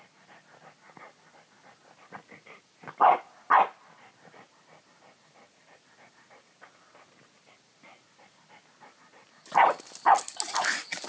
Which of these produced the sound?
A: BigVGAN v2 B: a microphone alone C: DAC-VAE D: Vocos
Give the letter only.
B